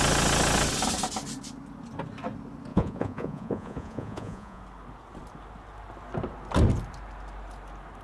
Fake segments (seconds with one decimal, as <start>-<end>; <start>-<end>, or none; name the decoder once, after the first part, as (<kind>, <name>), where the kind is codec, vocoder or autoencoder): 2.7-4.6 (vocoder, Vocos)